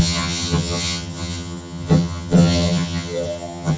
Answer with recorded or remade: remade